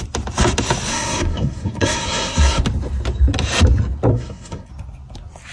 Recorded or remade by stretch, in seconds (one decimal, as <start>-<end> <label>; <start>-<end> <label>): 0.0-0.9 recorded; 0.9-2.6 remade; 2.6-4.1 recorded; 4.1-4.7 remade; 4.7-5.5 recorded